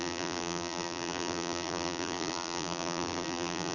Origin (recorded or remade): remade